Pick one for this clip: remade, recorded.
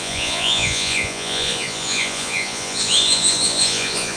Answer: remade